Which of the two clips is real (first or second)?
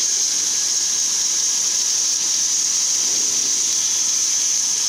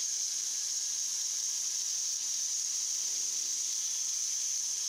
first